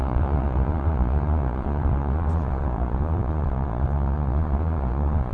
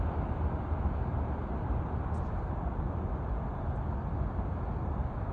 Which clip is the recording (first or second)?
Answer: second